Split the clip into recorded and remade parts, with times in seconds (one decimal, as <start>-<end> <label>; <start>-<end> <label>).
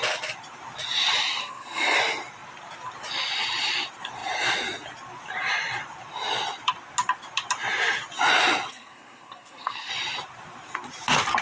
0.0-1.4 recorded; 1.4-2.0 remade; 2.0-8.7 recorded; 8.7-9.9 remade; 9.9-11.4 recorded